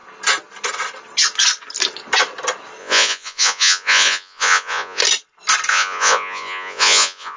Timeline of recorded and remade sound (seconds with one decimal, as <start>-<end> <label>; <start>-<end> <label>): 0.0-2.8 recorded; 2.8-5.0 remade; 5.0-5.7 recorded; 5.7-7.4 remade